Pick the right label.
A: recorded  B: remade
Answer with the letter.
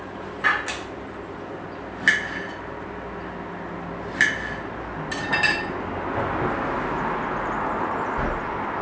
A